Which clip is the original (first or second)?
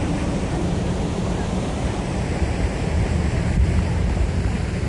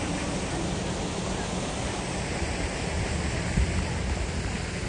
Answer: second